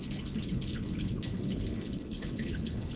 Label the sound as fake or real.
fake